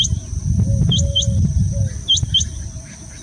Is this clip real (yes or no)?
yes